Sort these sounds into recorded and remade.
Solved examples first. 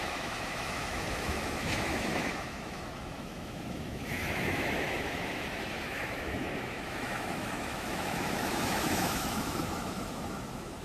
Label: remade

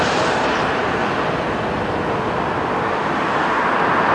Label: recorded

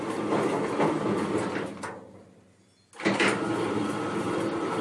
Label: recorded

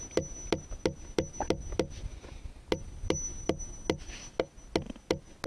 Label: recorded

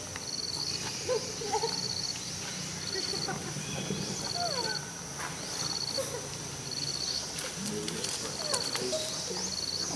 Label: recorded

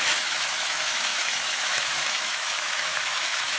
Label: remade